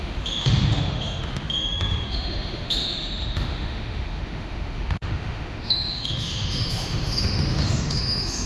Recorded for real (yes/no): no